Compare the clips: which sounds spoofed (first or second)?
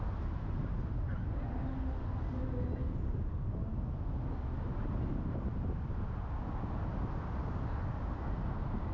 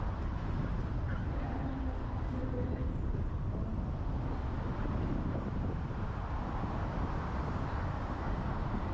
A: second